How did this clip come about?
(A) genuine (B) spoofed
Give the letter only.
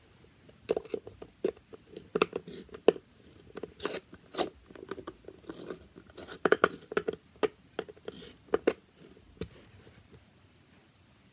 A